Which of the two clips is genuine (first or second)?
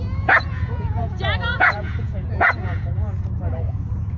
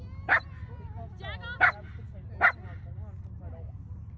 second